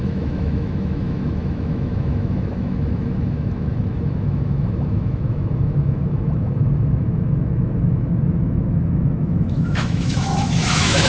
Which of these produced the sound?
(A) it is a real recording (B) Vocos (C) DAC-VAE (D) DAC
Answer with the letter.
C